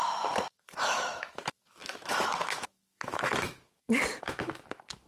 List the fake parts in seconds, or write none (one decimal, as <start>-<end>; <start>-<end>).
0.0-5.1